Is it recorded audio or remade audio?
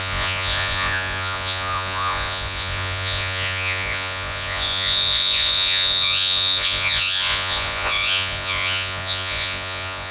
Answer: remade